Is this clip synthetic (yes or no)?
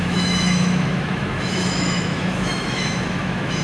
yes